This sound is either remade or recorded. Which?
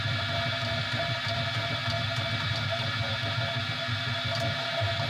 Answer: recorded